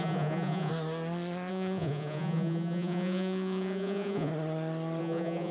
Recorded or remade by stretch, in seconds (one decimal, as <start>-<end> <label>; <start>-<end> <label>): 0.0-0.7 remade; 0.7-1.5 recorded; 1.5-4.3 remade; 4.3-5.0 recorded; 5.0-5.5 remade